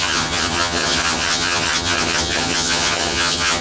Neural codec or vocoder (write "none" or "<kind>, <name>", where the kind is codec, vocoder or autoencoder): vocoder, HiFi-GAN